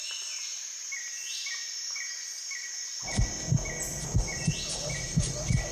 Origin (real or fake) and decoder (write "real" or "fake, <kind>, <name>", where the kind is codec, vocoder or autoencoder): real